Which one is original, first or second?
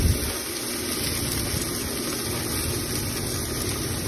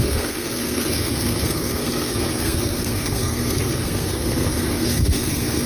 first